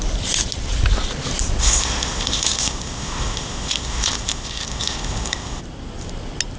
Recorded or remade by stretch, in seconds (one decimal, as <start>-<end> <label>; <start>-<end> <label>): 0.0-1.6 recorded; 1.6-5.6 remade; 5.6-6.6 recorded